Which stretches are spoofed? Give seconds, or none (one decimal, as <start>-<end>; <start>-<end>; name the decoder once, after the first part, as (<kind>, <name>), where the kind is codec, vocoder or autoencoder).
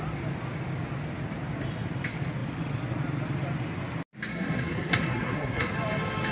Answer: 4.3-5.7 (codec, SNAC)